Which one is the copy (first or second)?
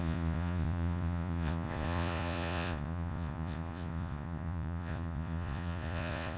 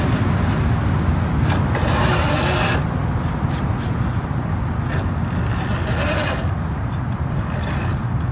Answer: first